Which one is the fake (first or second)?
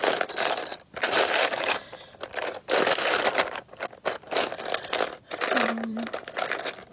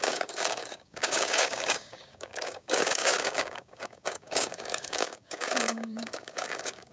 second